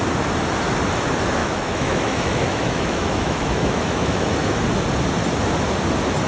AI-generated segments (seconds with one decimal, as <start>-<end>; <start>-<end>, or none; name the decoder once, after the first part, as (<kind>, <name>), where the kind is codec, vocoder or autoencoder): 1.4-4.6 (autoencoder, DAC-VAE)